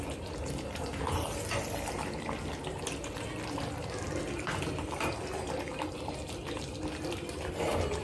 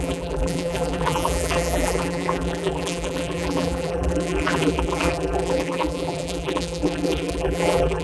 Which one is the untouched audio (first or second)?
first